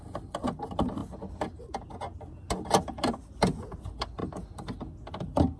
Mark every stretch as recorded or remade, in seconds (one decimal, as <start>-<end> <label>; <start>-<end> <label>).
0.0-5.6 recorded